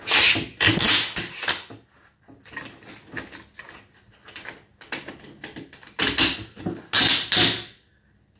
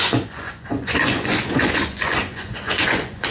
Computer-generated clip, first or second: second